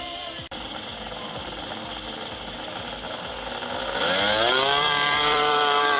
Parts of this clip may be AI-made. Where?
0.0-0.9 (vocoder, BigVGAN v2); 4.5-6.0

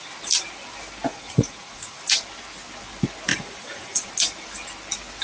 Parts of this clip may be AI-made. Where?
1.1-2.0 (vocoder, Vocos); 3.3-4.1

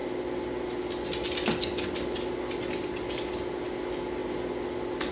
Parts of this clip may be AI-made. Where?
none

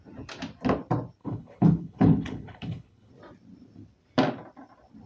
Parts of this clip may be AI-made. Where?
1.2-3.1 (codec, HILCodec)

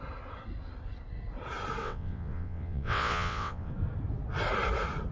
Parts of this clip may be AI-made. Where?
1.8-3.7 (vocoder, WaveNeXt)

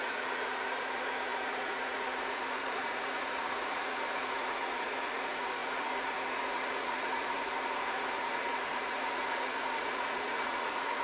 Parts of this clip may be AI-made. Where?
0.0-11.0 (vocoder, Vocos)